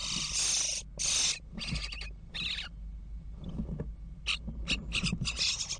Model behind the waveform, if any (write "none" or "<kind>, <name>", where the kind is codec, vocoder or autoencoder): none